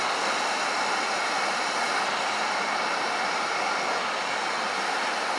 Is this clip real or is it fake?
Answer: real